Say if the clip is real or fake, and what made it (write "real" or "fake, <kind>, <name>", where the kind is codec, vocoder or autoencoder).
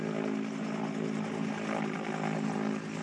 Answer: real